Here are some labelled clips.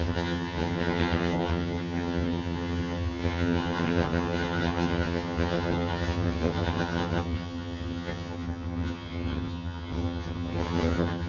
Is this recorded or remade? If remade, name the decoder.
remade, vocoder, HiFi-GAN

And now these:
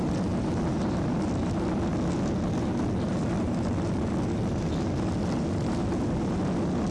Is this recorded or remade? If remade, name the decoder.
recorded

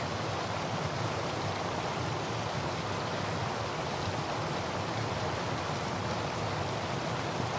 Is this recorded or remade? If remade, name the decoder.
recorded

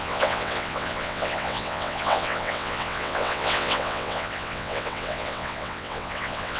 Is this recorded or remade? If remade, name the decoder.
remade, vocoder, WaveNeXt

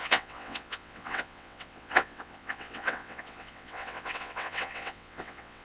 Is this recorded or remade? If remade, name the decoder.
remade, vocoder, WaveNeXt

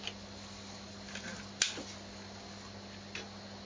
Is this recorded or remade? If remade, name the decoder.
recorded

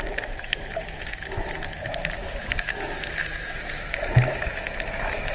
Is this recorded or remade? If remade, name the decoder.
remade, autoencoder, DAC-VAE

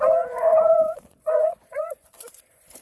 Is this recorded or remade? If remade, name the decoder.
remade, vocoder, Vocos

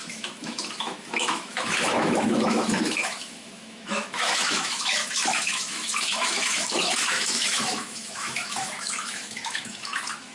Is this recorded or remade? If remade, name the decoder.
remade, autoencoder, DAC-VAE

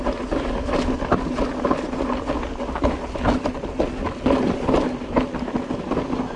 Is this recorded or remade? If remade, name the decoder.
recorded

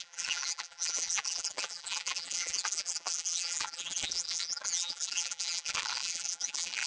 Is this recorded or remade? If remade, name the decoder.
remade, vocoder, BigVGAN v2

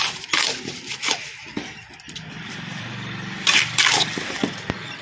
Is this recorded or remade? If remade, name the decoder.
remade, vocoder, BigVGAN v2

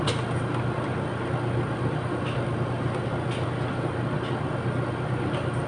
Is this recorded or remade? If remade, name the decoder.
recorded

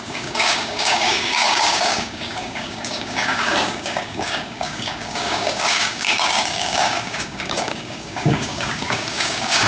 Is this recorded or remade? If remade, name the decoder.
remade, codec, DAC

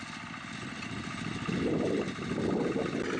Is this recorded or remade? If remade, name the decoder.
recorded